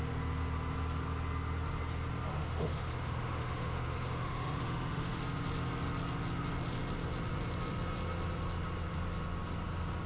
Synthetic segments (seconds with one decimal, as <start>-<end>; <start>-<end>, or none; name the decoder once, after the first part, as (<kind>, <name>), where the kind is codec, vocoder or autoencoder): 2.3-5.2 (autoencoder, DAC-VAE)